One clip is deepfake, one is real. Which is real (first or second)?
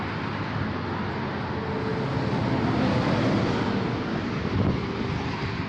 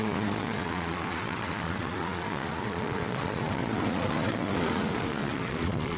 first